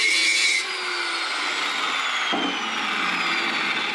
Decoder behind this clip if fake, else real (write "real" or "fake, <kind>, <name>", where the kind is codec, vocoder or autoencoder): real